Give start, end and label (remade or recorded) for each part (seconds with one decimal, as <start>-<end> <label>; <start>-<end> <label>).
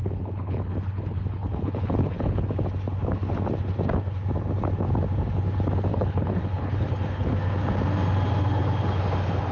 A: 0.0-2.5 remade; 2.5-5.9 recorded; 5.9-7.3 remade; 7.3-9.5 recorded